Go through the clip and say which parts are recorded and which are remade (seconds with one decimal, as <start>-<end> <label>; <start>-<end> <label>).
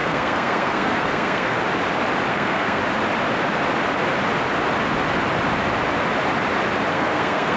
0.0-1.6 remade; 1.6-2.3 recorded; 2.3-2.8 remade; 2.8-6.9 recorded; 6.9-7.6 remade